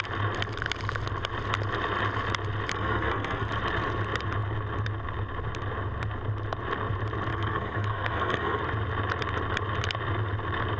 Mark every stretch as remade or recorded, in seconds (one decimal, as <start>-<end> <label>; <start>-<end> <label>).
0.0-2.7 recorded; 2.7-3.5 remade; 3.5-7.3 recorded; 7.3-8.6 remade; 8.6-10.8 recorded

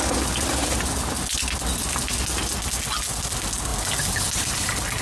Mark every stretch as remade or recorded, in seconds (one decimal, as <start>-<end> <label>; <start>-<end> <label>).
0.0-5.0 recorded

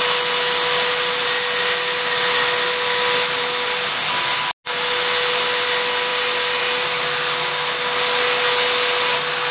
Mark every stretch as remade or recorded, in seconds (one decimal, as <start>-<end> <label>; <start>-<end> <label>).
0.0-9.5 recorded